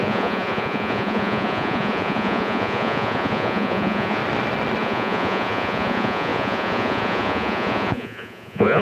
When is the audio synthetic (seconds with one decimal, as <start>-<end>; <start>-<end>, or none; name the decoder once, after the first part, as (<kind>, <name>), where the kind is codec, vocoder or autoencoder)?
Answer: 0.0-4.2 (vocoder, Vocos); 4.8-8.8